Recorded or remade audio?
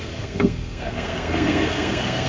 remade